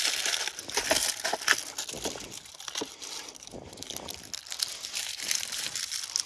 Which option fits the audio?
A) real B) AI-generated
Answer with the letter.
A